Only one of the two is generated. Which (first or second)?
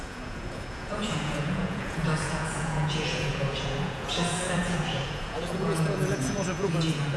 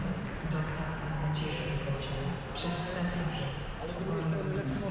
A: first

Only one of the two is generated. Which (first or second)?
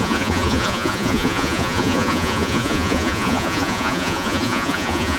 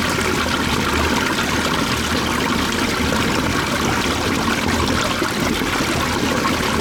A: first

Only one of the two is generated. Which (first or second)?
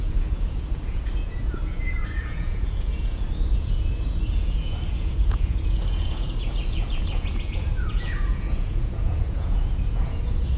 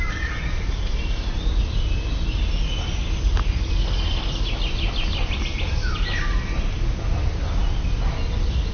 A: first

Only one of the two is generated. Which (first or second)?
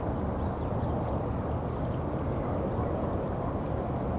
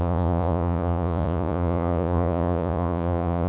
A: second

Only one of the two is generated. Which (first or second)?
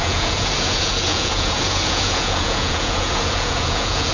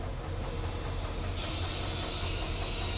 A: first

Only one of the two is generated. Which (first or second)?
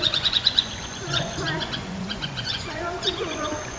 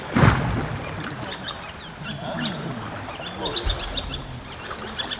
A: first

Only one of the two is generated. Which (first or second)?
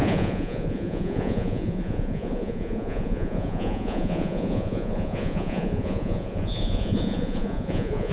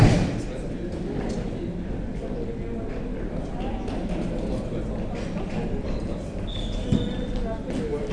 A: first